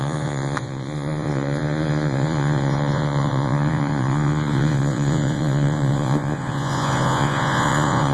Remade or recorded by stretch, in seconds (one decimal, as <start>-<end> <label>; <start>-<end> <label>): 0.0-8.1 remade